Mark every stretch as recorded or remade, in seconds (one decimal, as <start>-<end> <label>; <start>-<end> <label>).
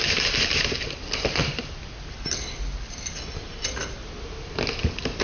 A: 0.0-5.2 recorded